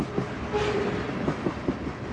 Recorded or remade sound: recorded